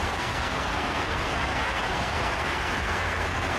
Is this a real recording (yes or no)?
no